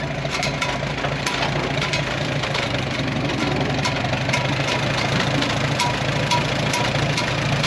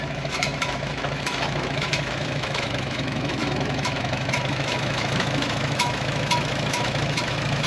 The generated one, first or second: second